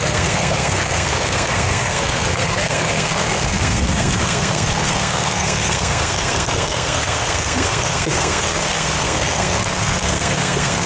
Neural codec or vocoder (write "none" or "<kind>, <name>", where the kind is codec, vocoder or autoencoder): codec, SNAC